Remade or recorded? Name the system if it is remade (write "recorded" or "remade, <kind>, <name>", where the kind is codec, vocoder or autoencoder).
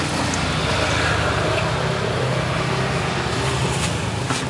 recorded